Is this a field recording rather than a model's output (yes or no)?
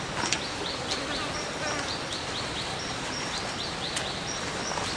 yes